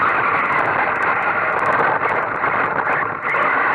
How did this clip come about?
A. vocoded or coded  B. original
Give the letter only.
B